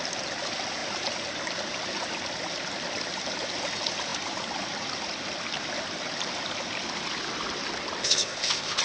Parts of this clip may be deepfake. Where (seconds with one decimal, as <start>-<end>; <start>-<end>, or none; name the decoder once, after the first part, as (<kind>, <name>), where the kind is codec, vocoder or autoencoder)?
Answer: 8.0-8.8 (codec, ZipCodec)

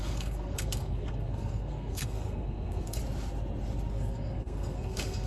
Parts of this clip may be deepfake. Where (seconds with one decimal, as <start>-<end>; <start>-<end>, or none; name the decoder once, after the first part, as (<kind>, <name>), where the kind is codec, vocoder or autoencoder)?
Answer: 0.0-3.0 (codec, SNAC); 3.9-5.3

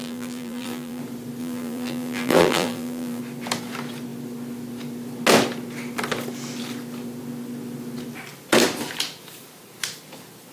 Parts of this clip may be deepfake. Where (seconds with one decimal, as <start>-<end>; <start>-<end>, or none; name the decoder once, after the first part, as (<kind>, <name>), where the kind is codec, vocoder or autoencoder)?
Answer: 0.0-1.0 (vocoder, BigVGAN v2); 1.4-3.2

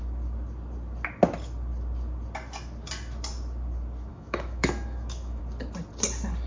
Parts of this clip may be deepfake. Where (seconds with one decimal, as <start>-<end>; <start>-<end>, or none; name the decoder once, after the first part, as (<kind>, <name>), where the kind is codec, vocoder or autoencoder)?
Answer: 4.1-5.4 (autoencoder, DAC-VAE)

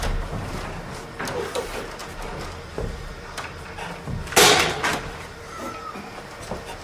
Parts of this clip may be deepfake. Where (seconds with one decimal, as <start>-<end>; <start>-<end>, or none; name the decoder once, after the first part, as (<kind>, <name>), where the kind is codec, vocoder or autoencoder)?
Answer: 2.0-3.7 (vocoder, BigVGAN v2); 4.9-5.5

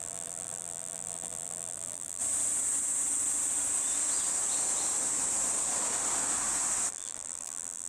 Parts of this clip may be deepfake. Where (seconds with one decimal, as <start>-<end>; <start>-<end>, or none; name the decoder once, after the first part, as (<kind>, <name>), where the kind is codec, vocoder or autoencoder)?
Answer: 0.0-2.2 (vocoder, BigVGAN v2); 6.9-7.9

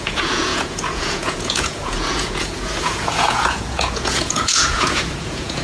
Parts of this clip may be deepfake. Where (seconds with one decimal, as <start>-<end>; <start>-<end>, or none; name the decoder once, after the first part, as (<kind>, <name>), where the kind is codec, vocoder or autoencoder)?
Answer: 0.0-5.6 (vocoder, Vocos)